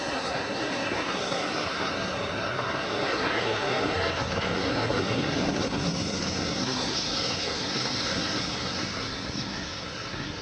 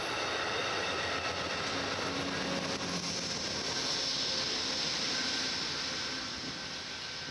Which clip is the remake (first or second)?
first